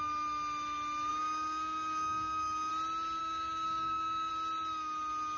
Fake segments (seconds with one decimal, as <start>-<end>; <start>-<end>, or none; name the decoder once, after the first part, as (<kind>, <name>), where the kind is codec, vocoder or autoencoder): 1.1-2.7 (codec, DAC); 3.2-4.3